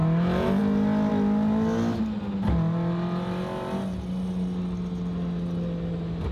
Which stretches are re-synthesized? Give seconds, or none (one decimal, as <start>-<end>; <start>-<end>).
none